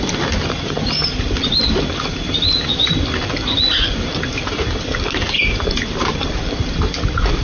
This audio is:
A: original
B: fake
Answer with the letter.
A